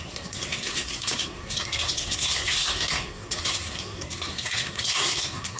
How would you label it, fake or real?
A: fake